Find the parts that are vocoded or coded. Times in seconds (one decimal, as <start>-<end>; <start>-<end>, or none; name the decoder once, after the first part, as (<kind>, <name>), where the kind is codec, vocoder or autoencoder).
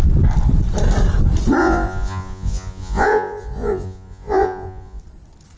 1.6-5.0 (vocoder, Vocos)